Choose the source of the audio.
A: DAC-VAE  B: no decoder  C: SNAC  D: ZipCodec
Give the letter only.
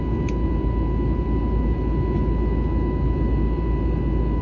B